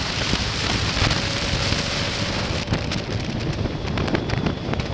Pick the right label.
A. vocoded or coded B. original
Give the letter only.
A